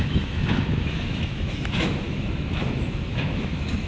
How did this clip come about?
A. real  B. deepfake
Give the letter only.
B